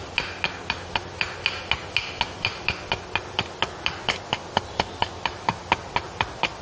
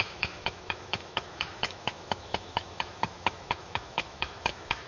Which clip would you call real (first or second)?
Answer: first